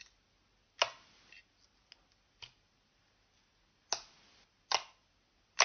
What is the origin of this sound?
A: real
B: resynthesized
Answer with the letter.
A